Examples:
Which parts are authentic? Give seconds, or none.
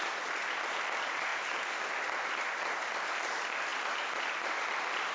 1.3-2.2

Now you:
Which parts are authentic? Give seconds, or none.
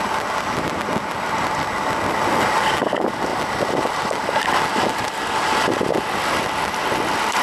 3.3-5.9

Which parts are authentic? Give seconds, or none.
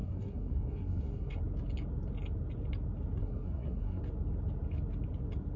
1.4-3.2; 4.0-5.6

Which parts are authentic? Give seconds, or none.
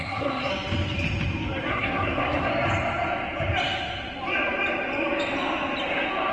0.5-1.7; 2.5-6.3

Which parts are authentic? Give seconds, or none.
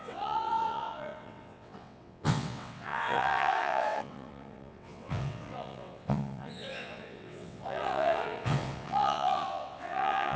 none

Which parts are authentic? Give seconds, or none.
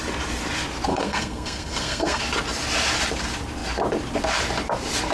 0.0-0.9; 2.2-5.1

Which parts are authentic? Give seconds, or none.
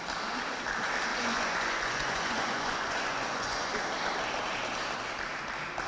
0.0-1.1; 3.8-5.9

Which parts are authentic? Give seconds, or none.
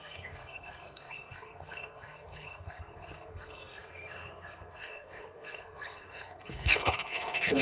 none